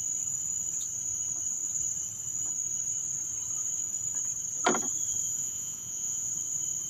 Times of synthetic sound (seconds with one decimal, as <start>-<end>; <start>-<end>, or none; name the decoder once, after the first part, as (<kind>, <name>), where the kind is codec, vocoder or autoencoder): 5.4-6.3 (vocoder, Vocos)